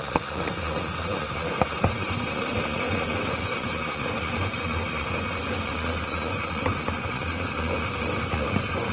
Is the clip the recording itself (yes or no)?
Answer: no